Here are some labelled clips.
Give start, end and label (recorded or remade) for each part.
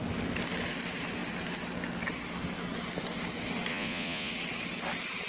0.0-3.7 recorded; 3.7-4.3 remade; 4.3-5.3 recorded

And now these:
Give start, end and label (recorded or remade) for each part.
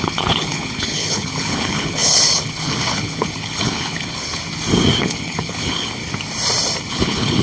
0.0-4.4 remade; 4.4-5.0 recorded; 5.0-6.0 remade; 6.0-6.9 recorded; 6.9-7.4 remade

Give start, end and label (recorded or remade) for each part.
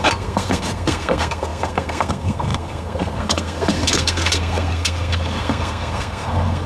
0.0-6.7 remade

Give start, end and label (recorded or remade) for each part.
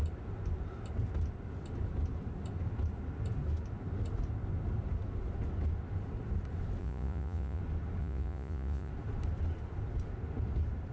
0.0-6.8 recorded; 6.8-7.6 remade; 7.6-8.0 recorded; 8.0-8.9 remade; 8.9-10.9 recorded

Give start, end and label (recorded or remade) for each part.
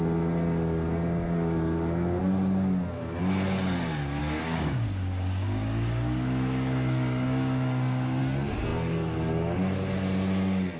0.0-4.2 recorded; 4.2-8.2 remade; 8.2-10.8 recorded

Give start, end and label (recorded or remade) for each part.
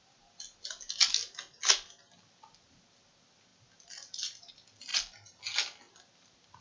0.0-3.5 recorded; 3.5-4.5 remade; 4.5-6.6 recorded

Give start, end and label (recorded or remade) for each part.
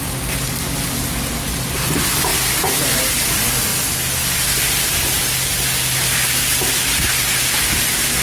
0.0-8.2 recorded